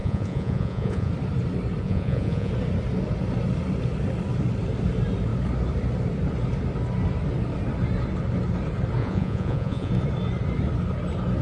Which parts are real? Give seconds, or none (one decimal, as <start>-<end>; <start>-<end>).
1.1-1.8; 2.5-9.0; 9.9-11.4